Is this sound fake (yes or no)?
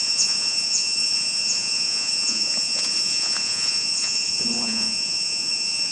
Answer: yes